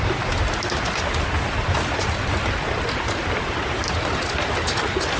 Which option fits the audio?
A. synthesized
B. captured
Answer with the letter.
B